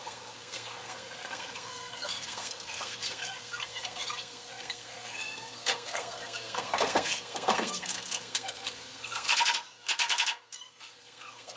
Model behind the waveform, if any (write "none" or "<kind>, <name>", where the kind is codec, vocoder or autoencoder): codec, SNAC